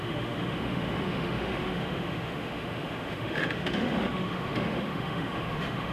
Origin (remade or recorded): remade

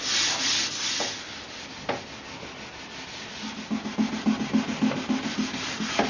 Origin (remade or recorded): recorded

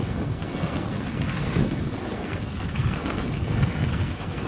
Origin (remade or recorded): remade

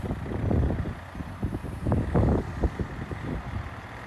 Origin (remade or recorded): recorded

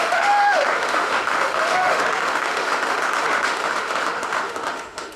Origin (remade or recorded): remade